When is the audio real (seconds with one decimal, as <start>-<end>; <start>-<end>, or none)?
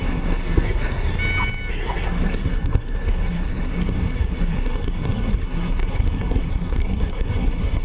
1.1-1.7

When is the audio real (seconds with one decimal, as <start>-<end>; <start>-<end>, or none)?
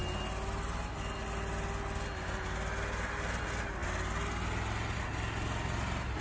0.0-6.2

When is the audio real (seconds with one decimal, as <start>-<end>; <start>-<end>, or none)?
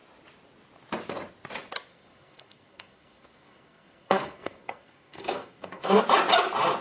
0.0-1.9; 6.0-6.8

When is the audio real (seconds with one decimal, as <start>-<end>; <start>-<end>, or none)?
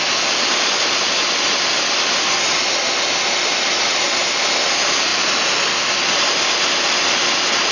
0.0-7.7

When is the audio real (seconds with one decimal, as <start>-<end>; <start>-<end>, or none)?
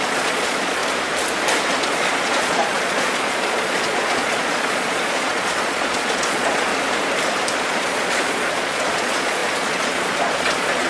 0.8-1.7; 6.7-7.6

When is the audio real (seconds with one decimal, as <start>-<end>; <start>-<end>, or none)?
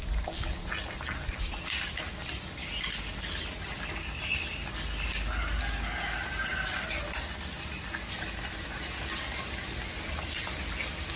0.0-11.2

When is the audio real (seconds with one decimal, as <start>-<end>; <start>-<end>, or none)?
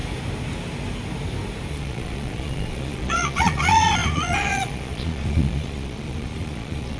0.0-1.7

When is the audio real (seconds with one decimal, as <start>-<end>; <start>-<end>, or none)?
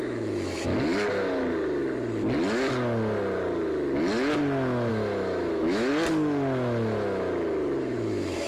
0.7-4.9; 5.9-7.8